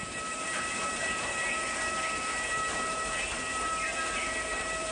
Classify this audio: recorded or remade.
remade